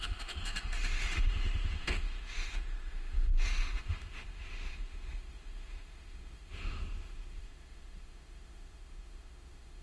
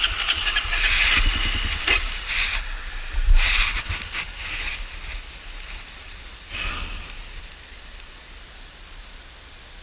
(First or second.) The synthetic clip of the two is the first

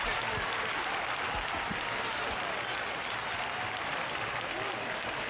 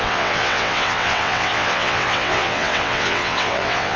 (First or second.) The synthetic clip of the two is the second